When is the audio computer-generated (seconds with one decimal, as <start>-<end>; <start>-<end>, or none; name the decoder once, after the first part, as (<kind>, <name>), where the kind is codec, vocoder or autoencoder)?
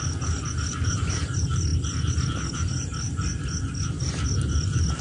none